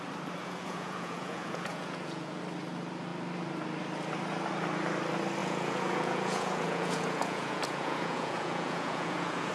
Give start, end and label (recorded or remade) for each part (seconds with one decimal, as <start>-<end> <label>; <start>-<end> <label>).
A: 0.0-0.4 recorded; 0.4-2.4 remade; 2.4-5.4 recorded; 5.4-9.5 remade